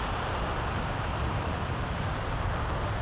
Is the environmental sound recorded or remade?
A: remade